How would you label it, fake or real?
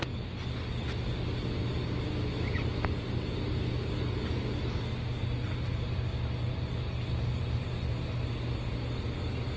real